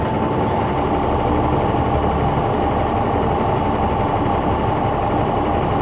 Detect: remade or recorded recorded